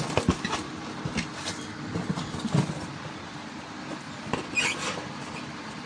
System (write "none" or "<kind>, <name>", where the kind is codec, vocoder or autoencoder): none